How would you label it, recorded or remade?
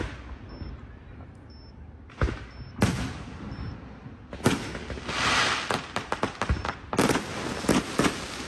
recorded